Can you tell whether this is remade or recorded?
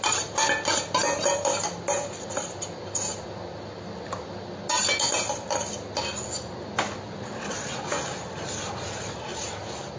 recorded